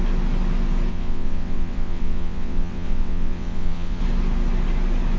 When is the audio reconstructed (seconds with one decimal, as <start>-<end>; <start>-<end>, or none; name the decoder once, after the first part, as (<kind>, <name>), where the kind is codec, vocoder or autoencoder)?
0.9-4.0 (vocoder, WaveNeXt)